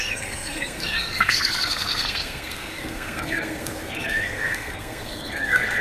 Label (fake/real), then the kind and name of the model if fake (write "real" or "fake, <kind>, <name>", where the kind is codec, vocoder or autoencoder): fake, codec, SNAC